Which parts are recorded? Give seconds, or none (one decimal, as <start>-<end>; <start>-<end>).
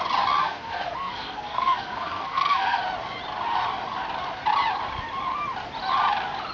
0.0-0.4; 2.8-6.5